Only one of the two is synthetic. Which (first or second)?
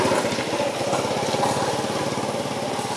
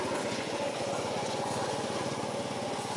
second